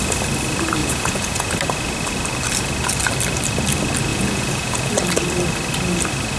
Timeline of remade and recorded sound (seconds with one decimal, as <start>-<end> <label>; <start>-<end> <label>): 0.0-0.8 recorded; 0.8-1.4 remade; 1.4-4.1 recorded; 4.1-4.9 remade; 4.9-6.4 recorded